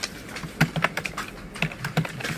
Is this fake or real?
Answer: real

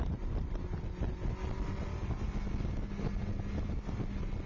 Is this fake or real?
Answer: real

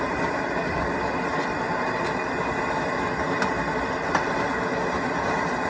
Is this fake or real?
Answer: real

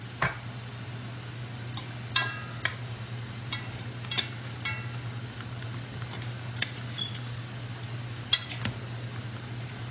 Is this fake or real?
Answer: real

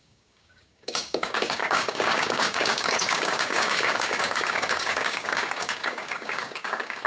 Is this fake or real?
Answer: fake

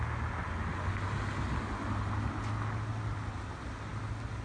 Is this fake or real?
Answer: real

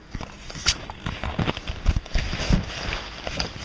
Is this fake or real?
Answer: real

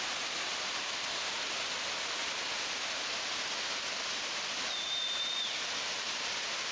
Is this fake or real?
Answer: real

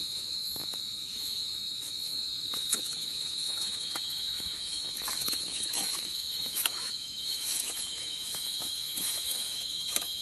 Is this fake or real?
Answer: fake